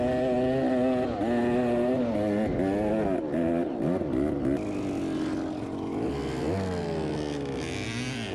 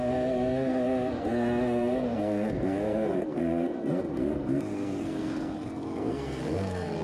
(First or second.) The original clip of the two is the first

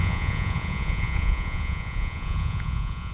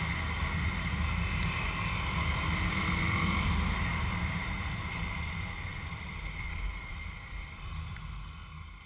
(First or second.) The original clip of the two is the second